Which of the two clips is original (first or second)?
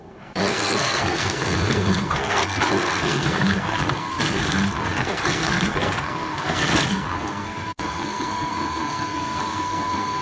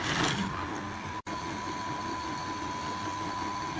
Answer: second